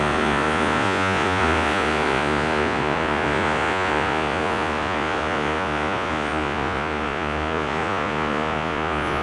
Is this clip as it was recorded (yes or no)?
no